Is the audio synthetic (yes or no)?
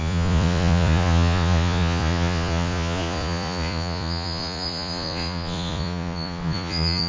yes